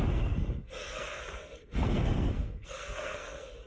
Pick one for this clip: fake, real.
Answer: fake